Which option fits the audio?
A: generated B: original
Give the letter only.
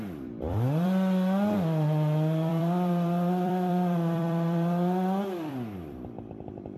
A